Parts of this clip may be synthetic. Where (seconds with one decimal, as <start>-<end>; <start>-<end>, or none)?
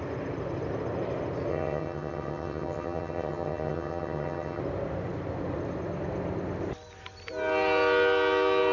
1.5-4.6